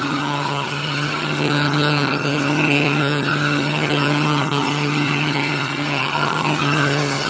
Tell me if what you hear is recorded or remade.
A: remade